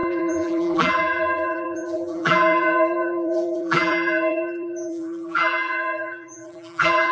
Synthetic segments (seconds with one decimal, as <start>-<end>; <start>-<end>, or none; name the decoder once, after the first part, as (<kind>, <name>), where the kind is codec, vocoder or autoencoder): 0.0-7.1 (vocoder, BigVGAN v2)